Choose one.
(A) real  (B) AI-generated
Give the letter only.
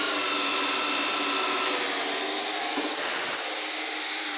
A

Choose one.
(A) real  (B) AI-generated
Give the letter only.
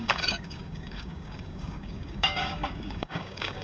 B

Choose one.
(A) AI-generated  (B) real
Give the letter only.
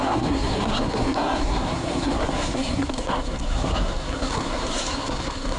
A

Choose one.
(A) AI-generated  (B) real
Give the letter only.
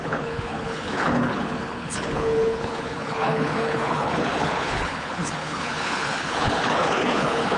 A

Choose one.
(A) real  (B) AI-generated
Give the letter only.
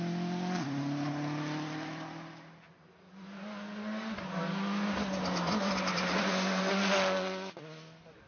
A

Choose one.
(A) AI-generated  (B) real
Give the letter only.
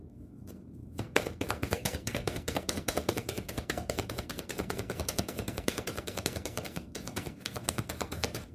A